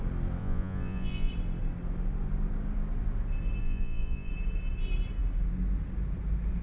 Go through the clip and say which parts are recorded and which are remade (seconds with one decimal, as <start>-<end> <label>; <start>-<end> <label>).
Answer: 0.0-0.4 recorded; 0.4-1.3 remade; 1.3-3.6 recorded; 3.6-4.3 remade; 4.3-6.6 recorded